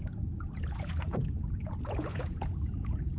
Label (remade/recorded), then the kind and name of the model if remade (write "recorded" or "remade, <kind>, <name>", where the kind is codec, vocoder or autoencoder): remade, vocoder, Vocos